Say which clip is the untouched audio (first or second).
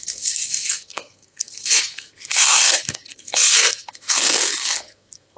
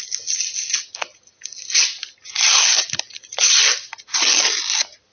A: second